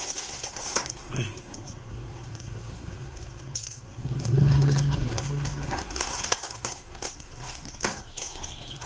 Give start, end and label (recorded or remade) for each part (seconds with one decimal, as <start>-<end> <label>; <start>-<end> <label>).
0.0-8.9 remade